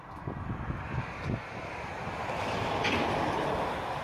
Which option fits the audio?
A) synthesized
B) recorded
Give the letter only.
B